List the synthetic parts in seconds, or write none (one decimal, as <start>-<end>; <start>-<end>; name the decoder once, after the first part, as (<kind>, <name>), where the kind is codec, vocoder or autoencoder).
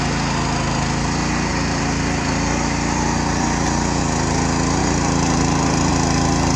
1.5-4.0 (vocoder, BigVGAN v2); 4.8-5.9